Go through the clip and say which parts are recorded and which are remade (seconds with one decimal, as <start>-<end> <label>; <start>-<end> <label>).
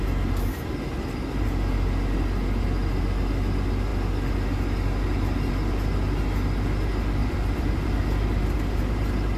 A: 0.0-7.2 recorded; 7.2-8.8 remade; 8.8-9.4 recorded